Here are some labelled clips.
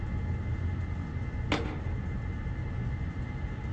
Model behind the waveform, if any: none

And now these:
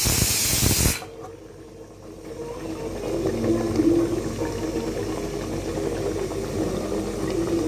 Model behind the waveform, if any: none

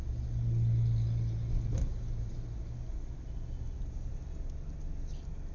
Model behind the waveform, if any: none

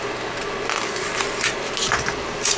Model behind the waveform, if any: none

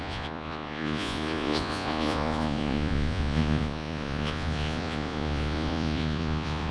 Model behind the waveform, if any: vocoder, Vocos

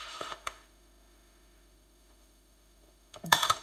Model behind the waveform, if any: autoencoder, DAC-VAE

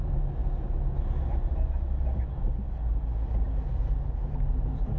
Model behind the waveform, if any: none